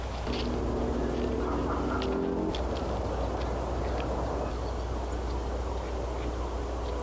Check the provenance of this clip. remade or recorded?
recorded